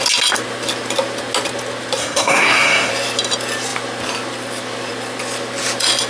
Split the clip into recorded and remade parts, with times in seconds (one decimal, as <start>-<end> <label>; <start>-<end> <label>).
0.0-2.0 recorded; 2.0-2.9 remade; 2.9-6.1 recorded

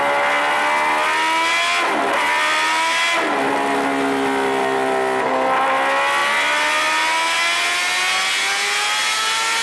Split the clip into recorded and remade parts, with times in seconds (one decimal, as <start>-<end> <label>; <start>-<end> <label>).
0.0-9.6 recorded

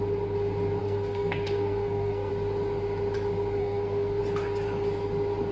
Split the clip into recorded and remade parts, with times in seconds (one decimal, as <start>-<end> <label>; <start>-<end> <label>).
0.0-0.8 recorded; 0.8-2.3 remade; 2.3-3.6 recorded; 3.6-4.2 remade; 4.2-5.5 recorded

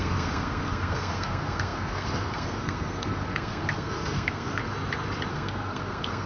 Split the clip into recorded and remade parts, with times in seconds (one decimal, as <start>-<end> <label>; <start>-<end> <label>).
0.0-4.6 remade; 4.6-5.3 recorded; 5.3-6.3 remade

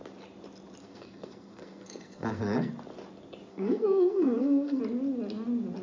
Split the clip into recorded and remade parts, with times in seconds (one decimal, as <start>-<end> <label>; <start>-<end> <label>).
0.0-0.8 recorded; 0.8-2.7 remade; 2.7-3.5 recorded; 3.5-4.8 remade; 4.8-5.8 recorded

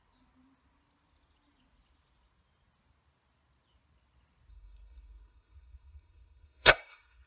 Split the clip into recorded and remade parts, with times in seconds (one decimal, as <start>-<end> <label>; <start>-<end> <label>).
0.0-4.5 recorded; 4.5-7.3 remade

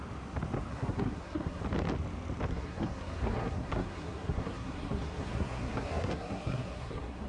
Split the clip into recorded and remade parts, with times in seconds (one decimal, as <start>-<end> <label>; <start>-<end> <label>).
0.0-0.7 recorded; 0.7-1.6 remade; 1.6-2.5 recorded; 2.5-7.3 remade